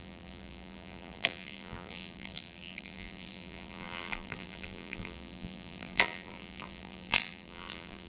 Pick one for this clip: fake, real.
fake